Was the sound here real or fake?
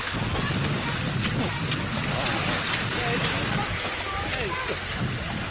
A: real